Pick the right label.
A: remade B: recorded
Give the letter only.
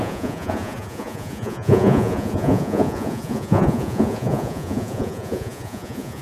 A